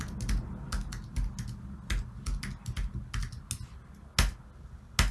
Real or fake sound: real